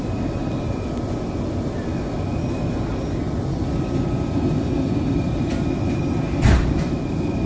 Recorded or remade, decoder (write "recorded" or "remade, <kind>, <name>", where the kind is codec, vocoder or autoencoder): recorded